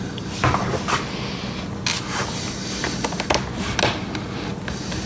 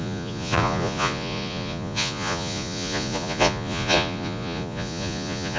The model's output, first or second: second